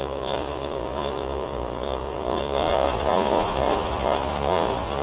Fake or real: fake